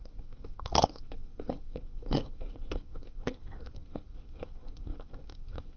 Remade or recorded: remade